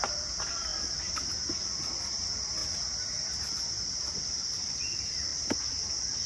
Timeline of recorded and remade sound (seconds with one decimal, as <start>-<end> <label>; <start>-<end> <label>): 0.0-6.3 recorded